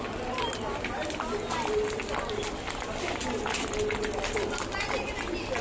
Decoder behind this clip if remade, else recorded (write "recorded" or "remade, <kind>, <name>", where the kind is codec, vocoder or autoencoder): recorded